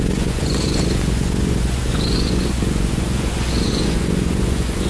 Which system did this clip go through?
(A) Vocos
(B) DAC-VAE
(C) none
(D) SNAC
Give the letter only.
A